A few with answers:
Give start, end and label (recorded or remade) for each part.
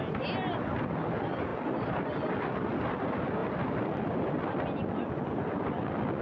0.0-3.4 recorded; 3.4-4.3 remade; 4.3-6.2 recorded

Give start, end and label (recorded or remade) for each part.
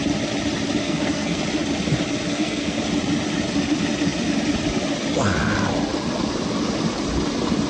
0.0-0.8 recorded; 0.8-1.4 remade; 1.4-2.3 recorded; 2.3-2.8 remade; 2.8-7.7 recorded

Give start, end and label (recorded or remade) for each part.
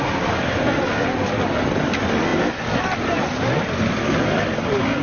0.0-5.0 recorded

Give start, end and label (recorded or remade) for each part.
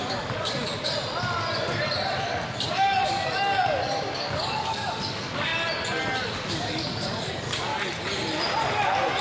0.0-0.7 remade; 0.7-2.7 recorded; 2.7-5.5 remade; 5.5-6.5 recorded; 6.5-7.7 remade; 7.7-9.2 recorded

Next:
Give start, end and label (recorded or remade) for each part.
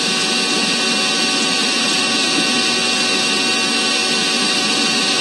0.0-1.6 recorded; 1.6-2.4 remade; 2.4-4.2 recorded; 4.2-5.2 remade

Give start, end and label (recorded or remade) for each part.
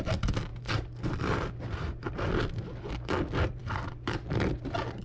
0.0-5.0 recorded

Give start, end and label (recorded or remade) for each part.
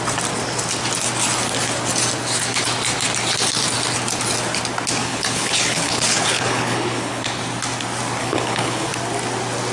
0.0-5.0 recorded; 5.0-7.4 remade; 7.4-8.2 recorded; 8.2-8.9 remade; 8.9-9.7 recorded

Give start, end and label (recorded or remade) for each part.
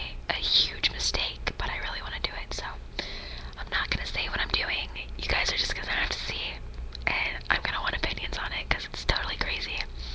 0.0-10.1 recorded